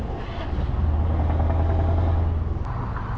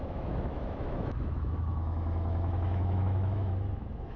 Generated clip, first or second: second